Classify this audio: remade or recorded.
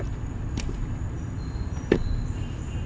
remade